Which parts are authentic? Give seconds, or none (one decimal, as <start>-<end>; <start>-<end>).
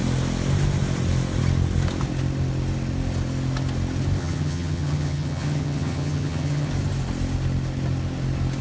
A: 0.0-4.2; 6.7-8.6